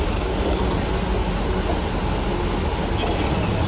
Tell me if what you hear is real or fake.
real